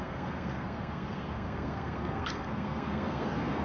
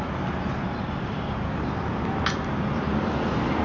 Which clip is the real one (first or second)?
second